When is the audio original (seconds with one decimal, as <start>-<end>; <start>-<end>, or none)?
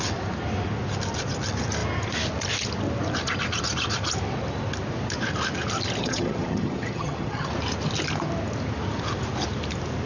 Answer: 0.0-6.0; 7.5-10.1